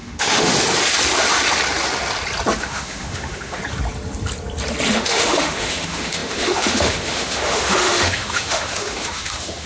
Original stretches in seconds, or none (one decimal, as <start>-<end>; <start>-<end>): 0.5-2.6; 3.6-4.9

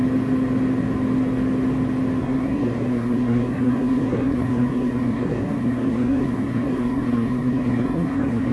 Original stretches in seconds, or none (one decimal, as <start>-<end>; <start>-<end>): 0.0-2.2

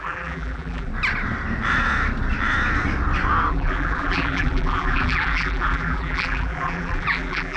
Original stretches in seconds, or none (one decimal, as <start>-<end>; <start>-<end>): 0.9-3.5